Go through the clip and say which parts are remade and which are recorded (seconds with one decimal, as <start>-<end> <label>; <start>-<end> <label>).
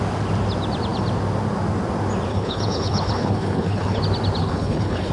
0.0-2.3 recorded; 2.3-4.0 remade; 4.0-4.4 recorded; 4.4-5.1 remade